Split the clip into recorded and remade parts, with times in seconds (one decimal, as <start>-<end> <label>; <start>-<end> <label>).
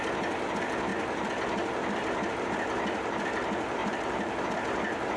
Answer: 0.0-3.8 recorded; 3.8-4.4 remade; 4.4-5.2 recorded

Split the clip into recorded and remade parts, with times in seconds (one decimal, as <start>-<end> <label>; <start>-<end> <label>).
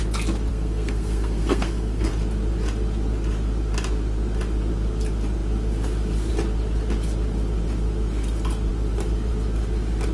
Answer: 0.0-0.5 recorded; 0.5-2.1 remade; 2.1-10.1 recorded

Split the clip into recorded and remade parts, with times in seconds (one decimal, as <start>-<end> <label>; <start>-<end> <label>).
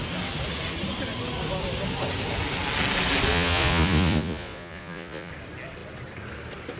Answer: 0.0-3.3 recorded; 3.3-5.3 remade; 5.3-6.8 recorded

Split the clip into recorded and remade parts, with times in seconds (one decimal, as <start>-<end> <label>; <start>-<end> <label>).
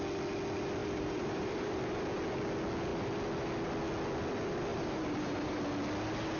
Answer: 0.0-0.8 recorded; 0.8-1.8 remade; 1.8-4.7 recorded; 4.7-5.6 remade; 5.6-6.4 recorded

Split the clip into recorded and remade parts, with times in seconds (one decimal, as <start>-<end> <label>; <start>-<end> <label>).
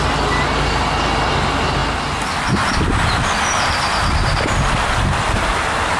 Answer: 0.0-6.0 recorded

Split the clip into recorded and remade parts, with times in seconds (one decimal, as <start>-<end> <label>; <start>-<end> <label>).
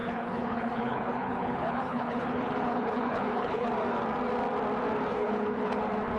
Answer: 0.0-3.7 remade; 3.7-5.1 recorded; 5.1-5.8 remade; 5.8-6.2 recorded